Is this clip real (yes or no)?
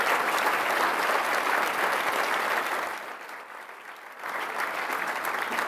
yes